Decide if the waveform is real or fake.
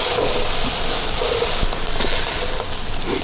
real